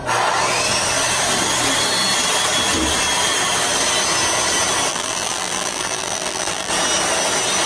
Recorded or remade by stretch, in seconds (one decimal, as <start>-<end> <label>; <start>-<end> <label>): 0.0-4.9 recorded; 4.9-6.7 remade; 6.7-7.7 recorded